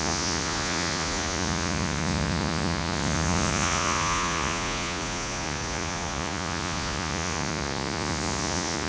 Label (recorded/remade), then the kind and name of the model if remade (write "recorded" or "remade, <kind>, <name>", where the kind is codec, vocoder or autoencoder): remade, vocoder, Vocos